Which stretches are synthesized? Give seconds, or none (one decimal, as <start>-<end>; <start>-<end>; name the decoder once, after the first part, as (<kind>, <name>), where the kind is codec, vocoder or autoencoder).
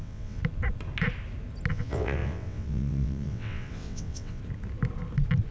0.0-0.4 (vocoder, WaveNeXt); 1.7-4.4